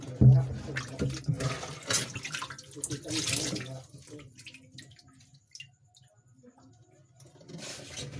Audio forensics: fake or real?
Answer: real